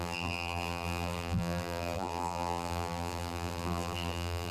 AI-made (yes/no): yes